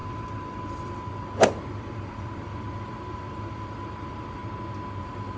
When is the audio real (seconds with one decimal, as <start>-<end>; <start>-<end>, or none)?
4.4-5.0

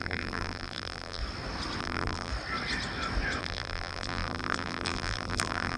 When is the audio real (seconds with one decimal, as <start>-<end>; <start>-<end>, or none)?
1.2-1.8; 2.3-3.4

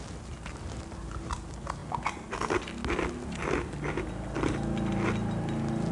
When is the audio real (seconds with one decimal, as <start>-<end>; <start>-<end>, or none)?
0.0-5.9